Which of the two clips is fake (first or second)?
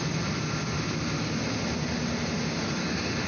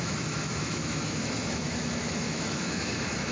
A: second